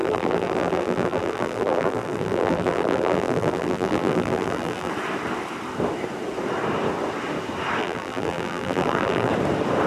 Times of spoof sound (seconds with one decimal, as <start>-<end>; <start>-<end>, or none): 0.0-4.9; 7.8-9.3